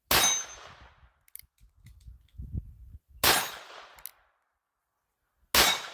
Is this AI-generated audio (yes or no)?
no